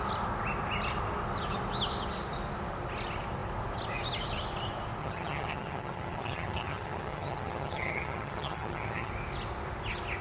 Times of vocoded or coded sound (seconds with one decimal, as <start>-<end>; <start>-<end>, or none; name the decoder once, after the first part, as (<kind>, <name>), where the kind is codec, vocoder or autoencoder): 5.0-9.1 (vocoder, HiFi-GAN)